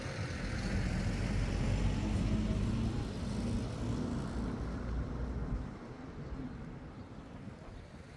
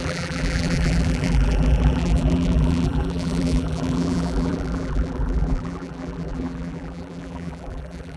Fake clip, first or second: second